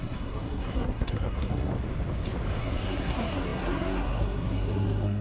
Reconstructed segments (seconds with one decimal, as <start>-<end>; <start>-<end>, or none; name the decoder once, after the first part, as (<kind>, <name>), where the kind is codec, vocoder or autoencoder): 0.0-1.7 (codec, SNAC); 2.6-5.2